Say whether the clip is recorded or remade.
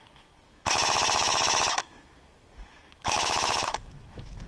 remade